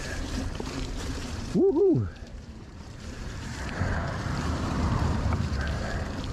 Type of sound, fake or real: fake